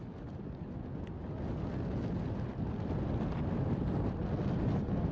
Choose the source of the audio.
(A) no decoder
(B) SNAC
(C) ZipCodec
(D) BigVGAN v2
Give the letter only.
A